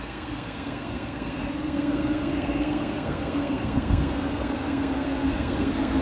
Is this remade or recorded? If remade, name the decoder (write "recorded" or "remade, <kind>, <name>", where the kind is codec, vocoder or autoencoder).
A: remade, codec, SNAC